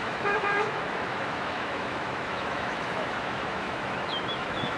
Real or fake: fake